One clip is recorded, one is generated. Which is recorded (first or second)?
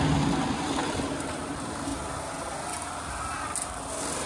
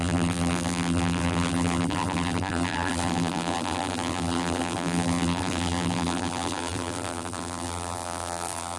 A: first